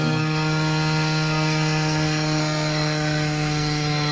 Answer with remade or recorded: remade